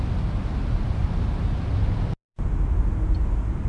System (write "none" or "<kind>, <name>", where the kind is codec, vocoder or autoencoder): none